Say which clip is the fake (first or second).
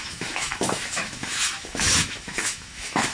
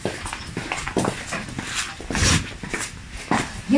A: first